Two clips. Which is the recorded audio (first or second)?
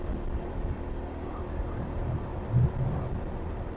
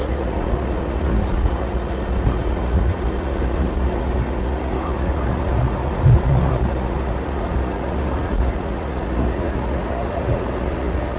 first